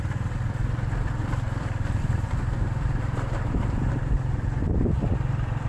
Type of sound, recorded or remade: remade